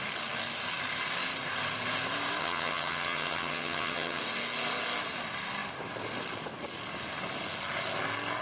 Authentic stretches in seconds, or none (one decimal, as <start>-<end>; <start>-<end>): 0.0-2.4; 4.2-8.4

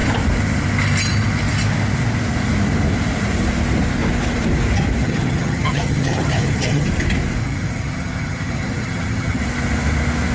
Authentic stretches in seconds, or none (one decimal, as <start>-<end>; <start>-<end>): 0.0-5.0; 6.9-7.4; 9.4-10.3

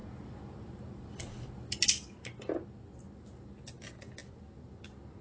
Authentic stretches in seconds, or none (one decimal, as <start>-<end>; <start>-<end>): 0.0-5.2

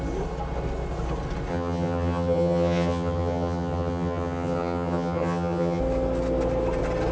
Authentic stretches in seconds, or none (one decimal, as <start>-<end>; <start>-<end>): 0.0-1.5; 5.8-7.1

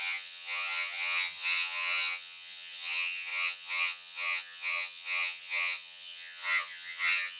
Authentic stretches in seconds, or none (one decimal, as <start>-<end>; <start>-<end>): none

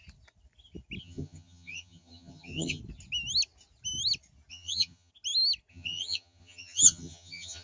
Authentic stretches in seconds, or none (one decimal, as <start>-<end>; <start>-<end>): 0.0-1.0; 2.8-4.5; 5.1-5.7